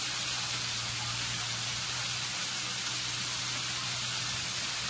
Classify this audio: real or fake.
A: real